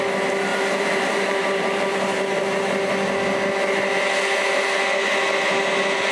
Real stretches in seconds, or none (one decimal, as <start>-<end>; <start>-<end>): 0.0-0.5; 2.4-6.1

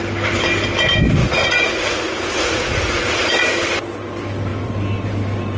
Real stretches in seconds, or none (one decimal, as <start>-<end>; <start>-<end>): 0.0-1.2; 3.3-5.6

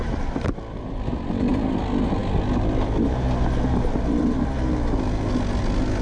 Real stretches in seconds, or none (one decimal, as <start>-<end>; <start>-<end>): 0.0-6.0